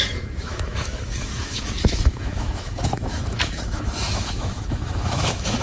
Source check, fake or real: fake